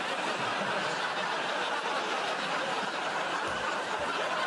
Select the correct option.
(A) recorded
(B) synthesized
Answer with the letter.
A